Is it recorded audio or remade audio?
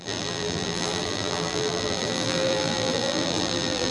remade